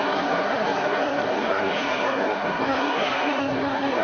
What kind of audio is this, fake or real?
fake